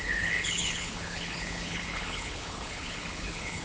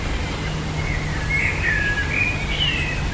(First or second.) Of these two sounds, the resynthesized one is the first